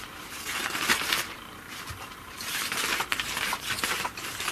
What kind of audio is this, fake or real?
fake